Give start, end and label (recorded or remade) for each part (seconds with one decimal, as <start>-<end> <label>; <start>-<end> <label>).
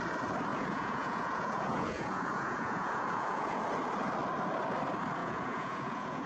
0.0-0.5 recorded; 0.5-3.6 remade; 3.6-5.2 recorded; 5.2-6.3 remade